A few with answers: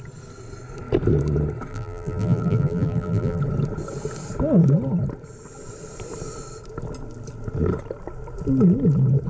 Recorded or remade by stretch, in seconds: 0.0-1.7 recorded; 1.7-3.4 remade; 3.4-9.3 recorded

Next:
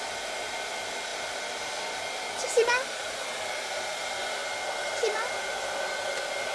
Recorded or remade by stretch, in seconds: 0.0-6.5 recorded

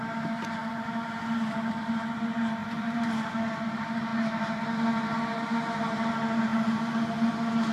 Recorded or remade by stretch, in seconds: 0.0-0.6 recorded; 0.6-1.7 remade; 1.7-2.6 recorded; 2.6-3.3 remade; 3.3-6.5 recorded; 6.5-7.3 remade; 7.3-7.7 recorded

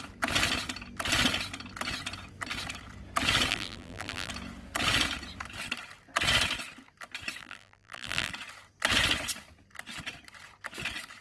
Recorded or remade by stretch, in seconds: 0.0-3.5 recorded; 3.5-4.3 remade; 4.3-7.4 recorded; 7.4-8.3 remade; 8.3-11.2 recorded